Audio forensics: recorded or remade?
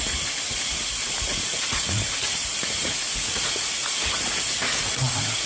remade